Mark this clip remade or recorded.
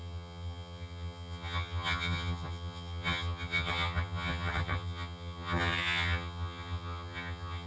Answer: remade